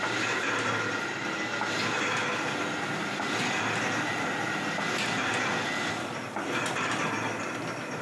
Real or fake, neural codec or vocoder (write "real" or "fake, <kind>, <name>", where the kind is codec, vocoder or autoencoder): real